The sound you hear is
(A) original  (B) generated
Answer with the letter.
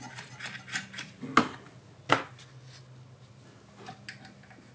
A